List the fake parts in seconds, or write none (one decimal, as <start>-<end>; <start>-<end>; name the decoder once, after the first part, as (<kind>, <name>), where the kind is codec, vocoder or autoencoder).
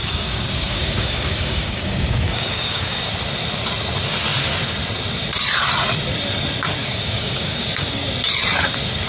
0.0-3.1 (codec, DAC); 6.8-8.0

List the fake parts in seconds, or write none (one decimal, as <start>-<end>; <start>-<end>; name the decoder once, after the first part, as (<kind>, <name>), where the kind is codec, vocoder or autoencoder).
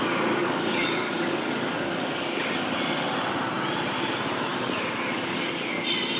0.4-2.5 (codec, DAC); 4.5-5.8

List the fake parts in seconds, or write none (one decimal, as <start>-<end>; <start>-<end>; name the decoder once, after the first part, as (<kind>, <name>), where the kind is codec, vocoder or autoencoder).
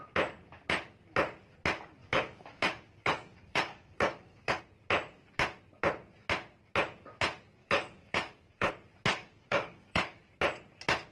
2.0-4.6 (codec, DAC); 7.6-8.7; 9.1-10.2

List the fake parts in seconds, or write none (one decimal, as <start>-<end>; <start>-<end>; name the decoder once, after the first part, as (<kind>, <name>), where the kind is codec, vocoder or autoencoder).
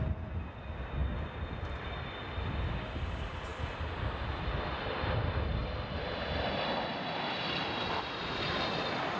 none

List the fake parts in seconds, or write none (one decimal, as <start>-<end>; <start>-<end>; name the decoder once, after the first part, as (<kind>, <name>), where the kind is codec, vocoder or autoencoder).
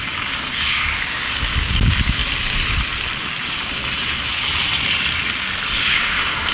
0.0-2.2 (codec, DAC); 3.2-3.8; 5.8-6.5